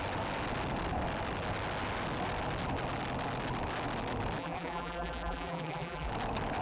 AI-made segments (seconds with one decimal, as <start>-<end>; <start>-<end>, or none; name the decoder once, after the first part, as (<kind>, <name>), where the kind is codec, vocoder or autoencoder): 4.4-6.1 (vocoder, BigVGAN v2)